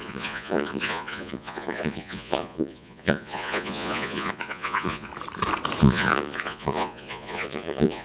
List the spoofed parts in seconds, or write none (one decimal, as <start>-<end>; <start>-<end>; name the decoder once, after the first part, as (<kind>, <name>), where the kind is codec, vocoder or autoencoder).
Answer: 0.0-5.1 (vocoder, Vocos); 5.8-8.0